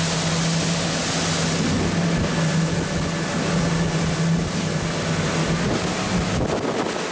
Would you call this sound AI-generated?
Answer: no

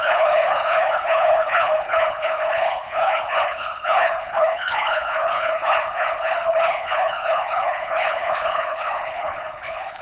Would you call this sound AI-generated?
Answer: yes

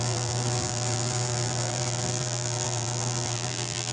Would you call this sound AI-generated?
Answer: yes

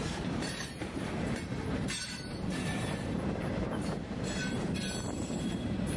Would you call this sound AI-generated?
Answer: yes